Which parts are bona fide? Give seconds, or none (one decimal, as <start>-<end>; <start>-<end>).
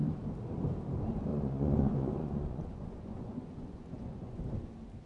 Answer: 0.0-1.3; 4.4-5.1